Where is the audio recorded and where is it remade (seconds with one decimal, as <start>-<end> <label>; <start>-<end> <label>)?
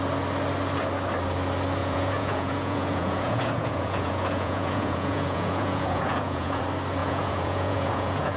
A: 0.0-1.8 recorded; 1.8-6.6 remade; 6.6-7.0 recorded; 7.0-8.4 remade